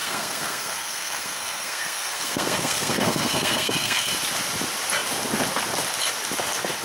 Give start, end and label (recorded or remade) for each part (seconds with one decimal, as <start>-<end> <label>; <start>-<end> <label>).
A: 0.0-4.1 remade; 4.1-6.8 recorded